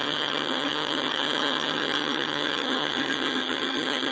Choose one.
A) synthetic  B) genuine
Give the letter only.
A